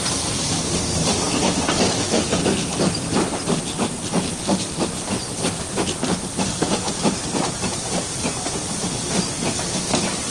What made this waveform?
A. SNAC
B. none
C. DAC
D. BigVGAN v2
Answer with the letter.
B